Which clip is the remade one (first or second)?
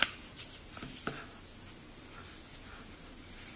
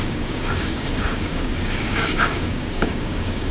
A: second